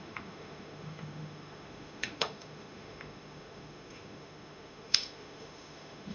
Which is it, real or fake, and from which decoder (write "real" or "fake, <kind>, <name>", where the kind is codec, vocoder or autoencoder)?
fake, autoencoder, DAC-VAE